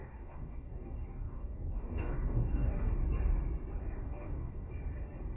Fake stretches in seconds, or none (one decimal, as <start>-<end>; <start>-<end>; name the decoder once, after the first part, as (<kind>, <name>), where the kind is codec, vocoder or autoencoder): 0.0-3.0 (codec, DAC); 3.8-4.7

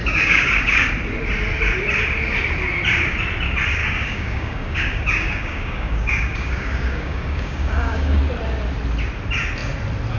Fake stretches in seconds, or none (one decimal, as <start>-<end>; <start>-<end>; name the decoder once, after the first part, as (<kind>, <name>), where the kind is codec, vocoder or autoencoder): 0.0-0.9 (codec, DAC); 3.8-8.2